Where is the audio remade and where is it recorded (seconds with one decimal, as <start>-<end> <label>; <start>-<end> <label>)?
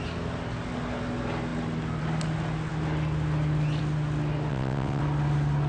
0.0-4.5 recorded; 4.5-5.0 remade; 5.0-5.7 recorded